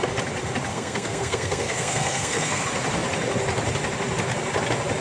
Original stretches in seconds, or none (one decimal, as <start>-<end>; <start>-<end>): 0.0-0.7; 2.6-5.0